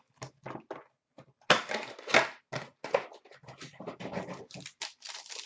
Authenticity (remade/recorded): recorded